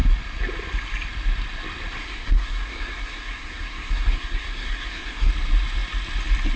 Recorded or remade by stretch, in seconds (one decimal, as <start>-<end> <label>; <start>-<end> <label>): 0.0-2.0 recorded; 2.0-5.3 remade; 5.3-6.6 recorded